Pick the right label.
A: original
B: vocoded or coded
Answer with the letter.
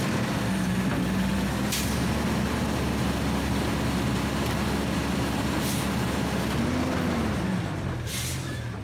A